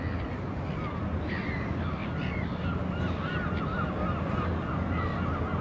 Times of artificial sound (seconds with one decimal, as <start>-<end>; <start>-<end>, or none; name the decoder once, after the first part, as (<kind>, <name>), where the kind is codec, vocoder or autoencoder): none